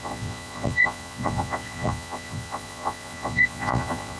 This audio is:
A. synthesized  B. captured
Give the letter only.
A